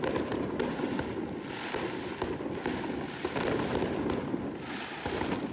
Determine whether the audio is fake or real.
real